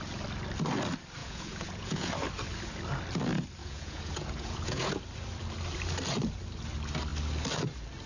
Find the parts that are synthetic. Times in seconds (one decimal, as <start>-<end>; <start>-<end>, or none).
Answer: 1.2-2.1; 3.6-4.9